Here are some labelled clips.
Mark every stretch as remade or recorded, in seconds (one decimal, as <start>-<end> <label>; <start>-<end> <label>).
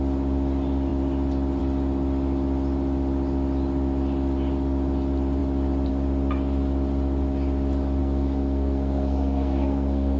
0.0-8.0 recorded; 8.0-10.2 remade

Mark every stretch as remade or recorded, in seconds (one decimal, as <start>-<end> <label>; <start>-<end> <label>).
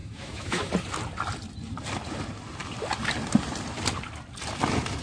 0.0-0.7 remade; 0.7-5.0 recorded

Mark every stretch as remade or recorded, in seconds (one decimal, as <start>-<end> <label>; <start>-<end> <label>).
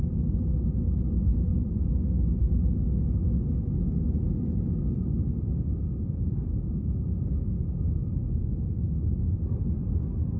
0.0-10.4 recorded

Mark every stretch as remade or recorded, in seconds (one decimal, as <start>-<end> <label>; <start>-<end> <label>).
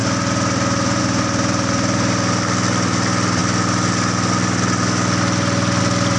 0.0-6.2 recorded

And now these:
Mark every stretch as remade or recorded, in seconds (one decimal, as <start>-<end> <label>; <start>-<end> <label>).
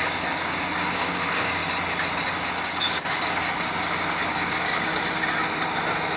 0.0-1.6 remade; 1.6-2.3 recorded; 2.3-3.7 remade; 3.7-4.3 recorded; 4.3-4.9 remade; 4.9-6.2 recorded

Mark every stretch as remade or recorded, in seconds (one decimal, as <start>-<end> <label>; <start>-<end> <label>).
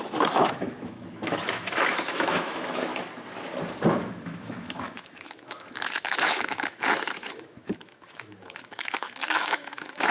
0.0-2.9 remade; 2.9-3.9 recorded; 3.9-10.1 remade